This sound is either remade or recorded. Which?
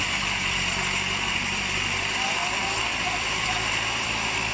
remade